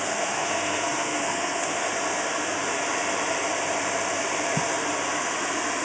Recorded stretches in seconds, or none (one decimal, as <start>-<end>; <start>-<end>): 1.9-5.8